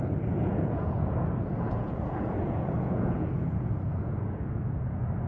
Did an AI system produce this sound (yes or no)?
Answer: yes